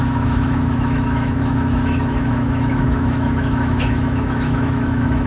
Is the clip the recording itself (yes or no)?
no